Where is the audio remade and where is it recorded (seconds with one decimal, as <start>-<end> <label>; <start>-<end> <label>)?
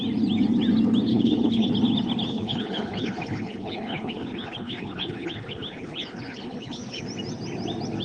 0.0-1.1 recorded; 1.1-1.7 remade; 1.7-2.3 recorded; 2.3-7.0 remade; 7.0-8.0 recorded